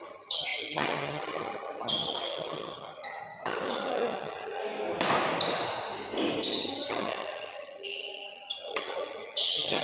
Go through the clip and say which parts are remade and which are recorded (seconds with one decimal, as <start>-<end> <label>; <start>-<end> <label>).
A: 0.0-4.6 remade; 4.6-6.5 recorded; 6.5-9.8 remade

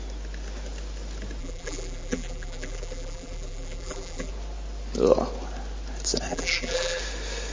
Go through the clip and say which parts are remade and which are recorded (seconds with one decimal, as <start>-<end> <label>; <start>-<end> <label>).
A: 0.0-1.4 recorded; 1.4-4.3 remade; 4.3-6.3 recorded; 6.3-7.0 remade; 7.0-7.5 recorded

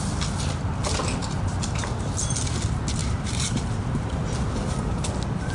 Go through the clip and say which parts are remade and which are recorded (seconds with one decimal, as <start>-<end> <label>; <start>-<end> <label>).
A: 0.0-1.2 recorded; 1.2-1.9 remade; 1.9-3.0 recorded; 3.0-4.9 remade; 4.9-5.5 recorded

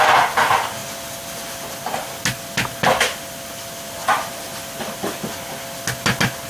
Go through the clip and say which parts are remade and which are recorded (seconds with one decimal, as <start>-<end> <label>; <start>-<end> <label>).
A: 0.0-6.5 recorded

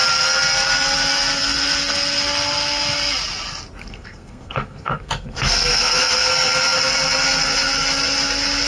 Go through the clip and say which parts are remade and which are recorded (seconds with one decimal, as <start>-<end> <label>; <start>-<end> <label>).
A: 0.0-3.8 recorded; 3.8-6.3 remade; 6.3-8.7 recorded

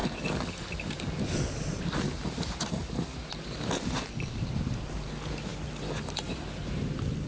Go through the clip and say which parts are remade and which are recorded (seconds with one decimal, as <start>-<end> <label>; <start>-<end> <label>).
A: 0.0-7.3 recorded

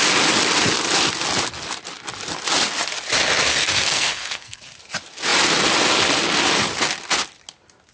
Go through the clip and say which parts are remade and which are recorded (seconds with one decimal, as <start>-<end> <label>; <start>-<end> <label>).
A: 0.0-3.5 recorded; 3.5-4.6 remade; 4.6-7.9 recorded